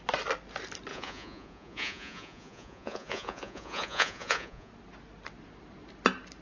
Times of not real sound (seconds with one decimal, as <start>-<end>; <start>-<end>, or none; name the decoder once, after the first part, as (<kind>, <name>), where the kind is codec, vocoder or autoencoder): 0.9-4.7 (vocoder, Vocos)